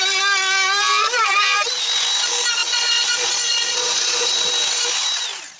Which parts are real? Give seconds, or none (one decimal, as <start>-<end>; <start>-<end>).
0.0-2.6; 4.5-5.6